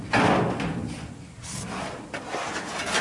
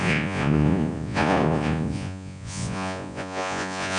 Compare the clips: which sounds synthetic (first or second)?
second